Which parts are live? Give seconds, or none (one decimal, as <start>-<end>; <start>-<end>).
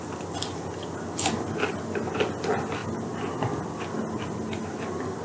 0.0-5.2